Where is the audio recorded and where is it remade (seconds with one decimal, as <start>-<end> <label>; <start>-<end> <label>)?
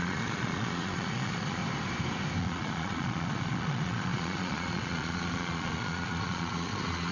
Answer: 0.0-1.6 remade; 1.6-2.4 recorded; 2.4-7.1 remade